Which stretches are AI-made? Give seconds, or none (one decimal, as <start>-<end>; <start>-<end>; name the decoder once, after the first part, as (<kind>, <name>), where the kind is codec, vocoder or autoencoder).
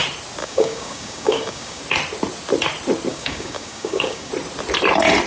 0.4-1.8 (codec, DAC); 3.1-4.3